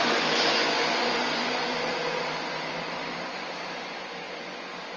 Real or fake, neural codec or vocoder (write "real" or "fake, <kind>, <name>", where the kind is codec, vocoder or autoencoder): fake, vocoder, Vocos